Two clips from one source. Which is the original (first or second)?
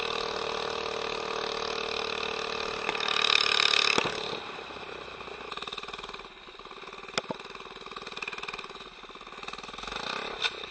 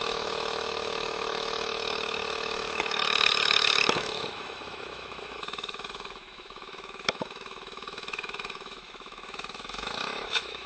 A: first